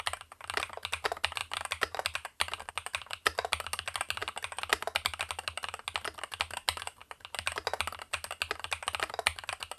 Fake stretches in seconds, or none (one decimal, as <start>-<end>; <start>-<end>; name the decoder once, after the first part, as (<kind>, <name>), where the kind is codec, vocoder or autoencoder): none